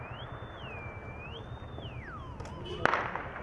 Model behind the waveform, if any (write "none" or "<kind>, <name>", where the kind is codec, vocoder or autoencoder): none